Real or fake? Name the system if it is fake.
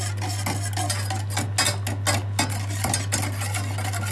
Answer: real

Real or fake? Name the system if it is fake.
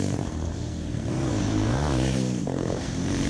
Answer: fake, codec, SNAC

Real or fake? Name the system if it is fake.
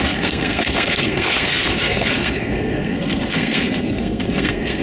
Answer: fake, codec, SNAC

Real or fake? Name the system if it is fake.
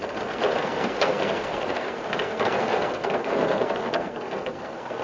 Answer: fake, codec, SNAC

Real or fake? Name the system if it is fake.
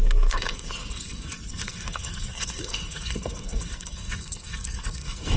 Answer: fake, codec, SNAC